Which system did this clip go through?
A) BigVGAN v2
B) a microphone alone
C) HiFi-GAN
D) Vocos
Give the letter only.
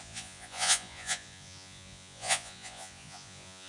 D